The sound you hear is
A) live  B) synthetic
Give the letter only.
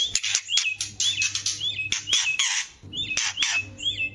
A